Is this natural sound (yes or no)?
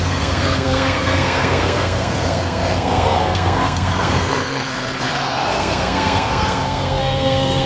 no